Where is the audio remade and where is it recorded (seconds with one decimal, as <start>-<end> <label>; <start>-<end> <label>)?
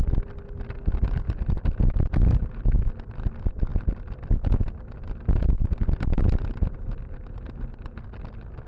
0.0-8.7 recorded